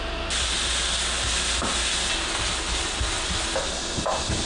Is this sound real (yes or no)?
yes